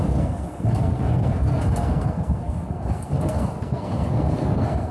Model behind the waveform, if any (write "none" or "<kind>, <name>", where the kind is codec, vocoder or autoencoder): codec, SNAC